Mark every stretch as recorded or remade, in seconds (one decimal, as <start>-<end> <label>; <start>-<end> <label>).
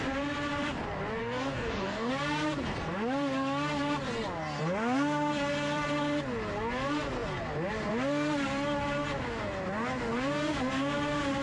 0.0-1.2 recorded; 1.2-2.1 remade; 2.1-11.4 recorded